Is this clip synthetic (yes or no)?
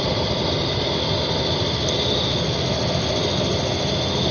no